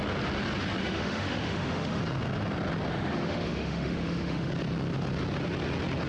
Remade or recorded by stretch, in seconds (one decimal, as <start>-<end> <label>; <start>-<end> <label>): 0.0-0.8 recorded; 0.8-2.0 remade; 2.0-2.9 recorded; 2.9-4.5 remade; 4.5-6.1 recorded